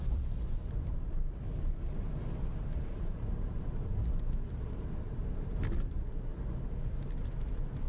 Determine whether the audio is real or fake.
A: fake